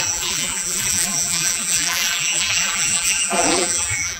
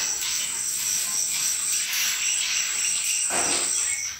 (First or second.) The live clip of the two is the second